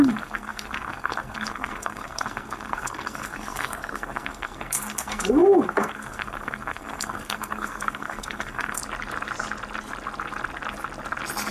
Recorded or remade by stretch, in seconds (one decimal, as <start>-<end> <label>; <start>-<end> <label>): 0.0-8.8 remade; 8.8-11.5 recorded

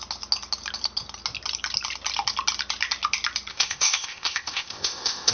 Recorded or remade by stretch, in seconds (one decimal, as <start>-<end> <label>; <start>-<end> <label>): 0.0-3.5 recorded; 3.5-5.3 remade

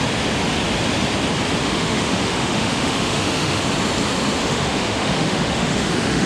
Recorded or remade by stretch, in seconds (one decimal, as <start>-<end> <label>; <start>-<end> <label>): 0.0-1.6 recorded; 1.6-3.6 remade; 3.6-4.4 recorded; 4.4-6.3 remade

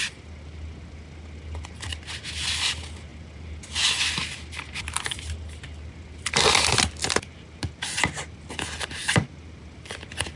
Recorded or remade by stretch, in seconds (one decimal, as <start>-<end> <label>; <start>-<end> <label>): 0.0-10.4 recorded

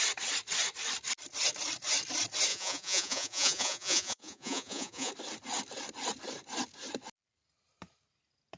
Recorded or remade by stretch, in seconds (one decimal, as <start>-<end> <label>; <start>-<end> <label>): 0.0-2.5 recorded; 2.5-5.1 remade; 5.1-8.6 recorded

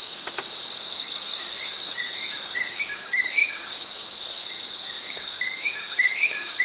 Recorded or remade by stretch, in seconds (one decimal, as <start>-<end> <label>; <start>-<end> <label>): 0.0-6.6 remade

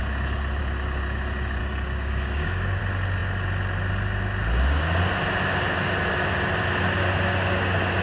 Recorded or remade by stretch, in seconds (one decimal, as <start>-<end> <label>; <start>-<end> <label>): 0.0-1.6 recorded; 1.6-2.8 remade; 2.8-8.0 recorded

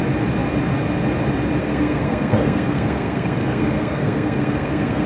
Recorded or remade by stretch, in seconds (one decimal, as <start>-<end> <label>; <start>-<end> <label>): 0.0-1.6 recorded; 1.6-5.1 remade